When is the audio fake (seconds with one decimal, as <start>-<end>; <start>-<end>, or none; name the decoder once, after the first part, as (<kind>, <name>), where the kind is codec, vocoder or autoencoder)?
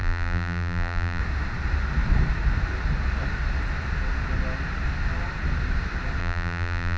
0.0-1.2 (vocoder, BigVGAN v2); 6.2-7.0